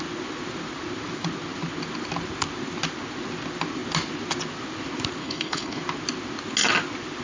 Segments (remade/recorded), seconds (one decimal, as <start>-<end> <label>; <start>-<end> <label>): 0.0-5.2 recorded; 5.2-5.8 remade; 5.8-7.2 recorded

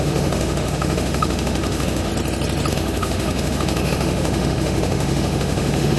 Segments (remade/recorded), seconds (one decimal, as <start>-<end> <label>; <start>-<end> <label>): 0.0-2.1 remade; 2.1-2.7 recorded; 2.7-6.0 remade

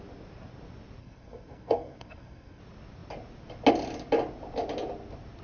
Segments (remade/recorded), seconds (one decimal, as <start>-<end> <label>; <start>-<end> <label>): 0.0-1.0 recorded; 1.0-2.6 remade; 2.6-5.4 recorded

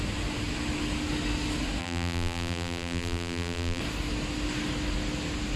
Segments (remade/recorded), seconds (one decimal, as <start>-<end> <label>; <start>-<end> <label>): 0.0-1.8 recorded; 1.8-3.8 remade; 3.8-5.6 recorded

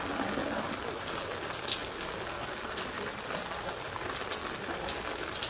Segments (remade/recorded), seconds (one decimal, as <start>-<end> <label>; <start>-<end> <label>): 0.0-5.5 recorded